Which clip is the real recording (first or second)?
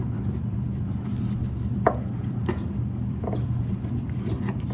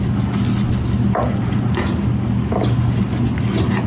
second